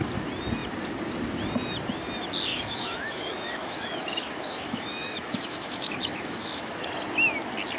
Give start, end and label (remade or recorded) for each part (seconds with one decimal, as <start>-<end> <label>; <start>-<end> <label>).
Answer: 0.0-2.5 recorded; 2.5-6.8 remade; 6.8-7.8 recorded